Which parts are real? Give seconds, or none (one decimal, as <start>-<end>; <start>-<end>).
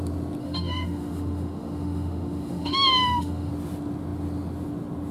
0.0-0.4; 3.5-5.1